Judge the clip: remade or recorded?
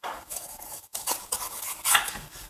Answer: remade